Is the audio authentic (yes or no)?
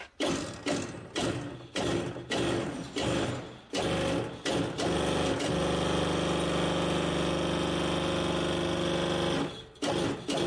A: yes